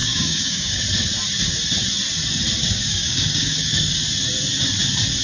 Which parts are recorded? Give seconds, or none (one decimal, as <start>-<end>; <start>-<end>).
0.8-2.6; 4.0-5.2